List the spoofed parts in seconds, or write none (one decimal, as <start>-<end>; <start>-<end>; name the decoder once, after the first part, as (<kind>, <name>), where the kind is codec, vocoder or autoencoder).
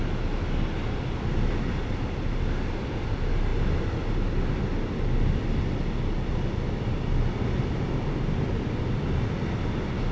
none